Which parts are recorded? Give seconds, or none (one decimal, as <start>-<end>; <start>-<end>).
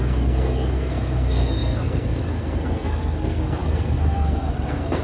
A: none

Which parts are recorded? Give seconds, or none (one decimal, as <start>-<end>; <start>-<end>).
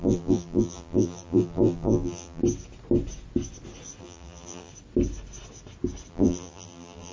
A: 2.4-4.0; 4.7-6.1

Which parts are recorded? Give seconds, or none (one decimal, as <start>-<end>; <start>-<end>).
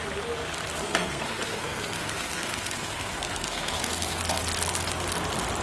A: 0.0-0.8; 4.2-5.6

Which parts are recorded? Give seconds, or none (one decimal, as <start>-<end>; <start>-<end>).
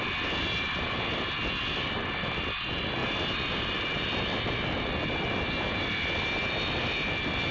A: 0.0-7.5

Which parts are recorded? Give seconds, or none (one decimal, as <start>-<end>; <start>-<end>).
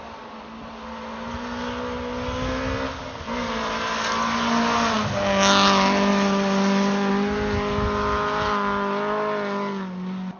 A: 0.0-10.4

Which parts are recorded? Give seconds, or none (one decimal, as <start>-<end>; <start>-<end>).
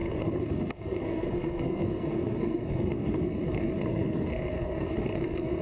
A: none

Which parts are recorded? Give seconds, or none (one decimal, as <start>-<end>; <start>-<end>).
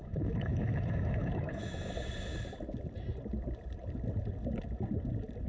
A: 1.9-5.5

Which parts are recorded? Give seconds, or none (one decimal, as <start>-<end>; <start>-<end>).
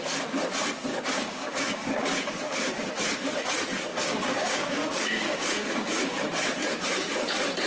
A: 0.0-0.9; 2.9-3.9; 6.2-7.7